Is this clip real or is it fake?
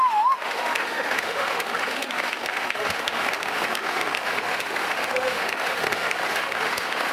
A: fake